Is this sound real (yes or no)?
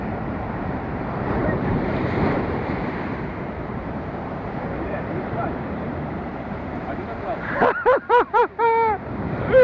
no